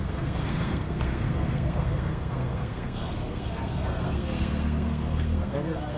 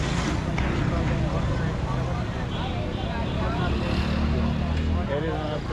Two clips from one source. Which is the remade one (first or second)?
first